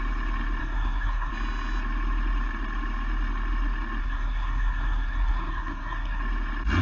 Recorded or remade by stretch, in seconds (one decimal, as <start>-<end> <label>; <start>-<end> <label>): 0.0-0.6 recorded; 0.6-1.3 remade; 1.3-4.0 recorded; 4.0-6.2 remade; 6.2-6.8 recorded